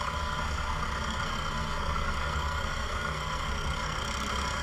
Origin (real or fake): fake